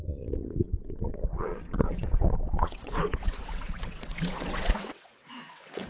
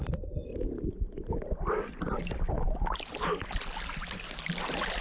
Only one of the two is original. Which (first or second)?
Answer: second